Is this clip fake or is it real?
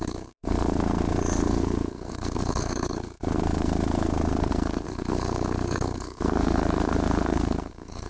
fake